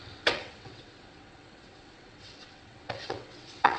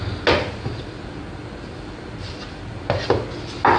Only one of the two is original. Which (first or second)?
second